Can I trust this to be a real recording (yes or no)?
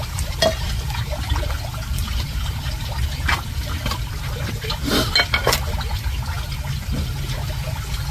yes